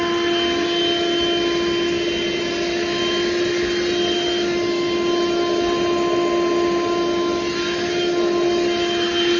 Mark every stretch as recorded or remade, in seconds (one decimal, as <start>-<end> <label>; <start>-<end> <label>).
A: 0.0-9.4 recorded